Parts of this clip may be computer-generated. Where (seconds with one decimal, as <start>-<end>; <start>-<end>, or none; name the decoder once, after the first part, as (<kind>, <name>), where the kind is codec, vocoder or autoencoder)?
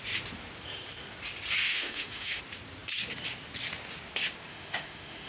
1.6-2.4 (autoencoder, DAC-VAE); 4.5-5.3